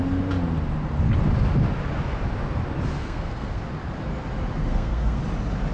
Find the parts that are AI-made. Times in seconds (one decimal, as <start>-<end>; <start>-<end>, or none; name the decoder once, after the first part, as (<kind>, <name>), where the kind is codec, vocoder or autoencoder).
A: 3.0-3.6 (codec, SNAC); 4.6-5.2